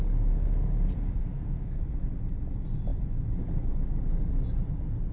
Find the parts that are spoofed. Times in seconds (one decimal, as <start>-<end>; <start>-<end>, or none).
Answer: 1.2-1.8